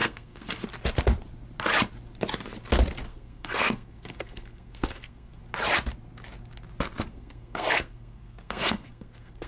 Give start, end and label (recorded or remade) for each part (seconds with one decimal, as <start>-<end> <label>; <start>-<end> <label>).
0.0-0.6 remade; 0.6-3.1 recorded; 3.1-5.4 remade; 5.4-7.1 recorded; 7.1-9.5 remade